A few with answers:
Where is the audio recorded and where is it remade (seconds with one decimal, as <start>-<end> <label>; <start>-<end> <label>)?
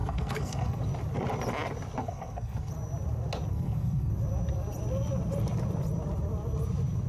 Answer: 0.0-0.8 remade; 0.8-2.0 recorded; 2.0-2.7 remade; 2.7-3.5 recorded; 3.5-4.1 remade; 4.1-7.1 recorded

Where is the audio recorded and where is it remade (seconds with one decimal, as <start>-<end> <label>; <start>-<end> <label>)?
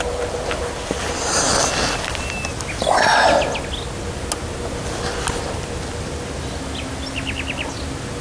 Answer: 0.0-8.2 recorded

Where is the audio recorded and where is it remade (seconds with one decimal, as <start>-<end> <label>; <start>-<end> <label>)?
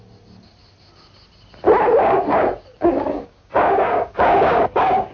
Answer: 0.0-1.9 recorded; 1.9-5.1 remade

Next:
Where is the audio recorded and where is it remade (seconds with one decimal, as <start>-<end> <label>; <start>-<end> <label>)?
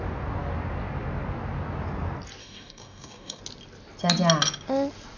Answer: 0.0-2.4 recorded; 2.4-3.4 remade; 3.4-5.2 recorded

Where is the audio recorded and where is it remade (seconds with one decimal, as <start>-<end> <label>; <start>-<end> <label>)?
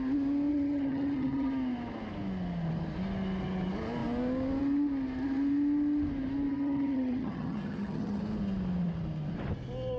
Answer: 0.0-0.5 recorded; 0.5-1.5 remade; 1.5-6.5 recorded; 6.5-8.2 remade; 8.2-10.0 recorded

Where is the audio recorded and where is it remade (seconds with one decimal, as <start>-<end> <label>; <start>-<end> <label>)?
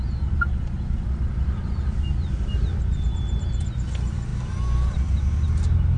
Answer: 0.0-6.0 recorded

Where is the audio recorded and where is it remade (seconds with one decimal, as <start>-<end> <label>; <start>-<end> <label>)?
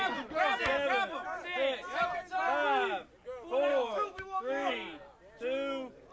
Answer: 0.0-3.7 recorded; 3.7-4.7 remade; 4.7-6.1 recorded